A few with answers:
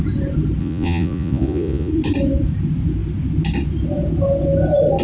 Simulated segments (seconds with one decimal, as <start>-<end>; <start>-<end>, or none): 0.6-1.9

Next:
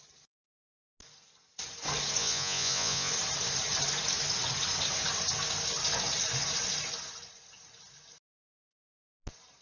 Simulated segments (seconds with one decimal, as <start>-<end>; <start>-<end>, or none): 2.2-3.1

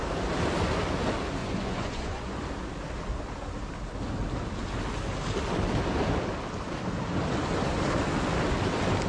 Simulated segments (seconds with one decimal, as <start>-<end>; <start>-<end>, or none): 1.4-2.4